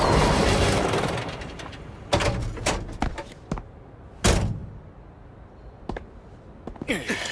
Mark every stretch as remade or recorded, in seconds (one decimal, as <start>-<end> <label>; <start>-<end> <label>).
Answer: 0.0-7.3 recorded